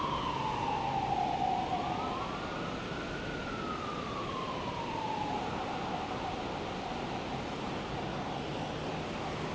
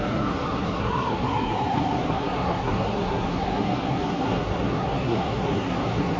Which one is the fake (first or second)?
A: second